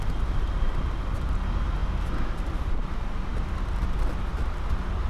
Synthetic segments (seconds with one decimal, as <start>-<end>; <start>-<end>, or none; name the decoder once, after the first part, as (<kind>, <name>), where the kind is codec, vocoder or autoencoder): 0.0-1.8 (vocoder, BigVGAN v2)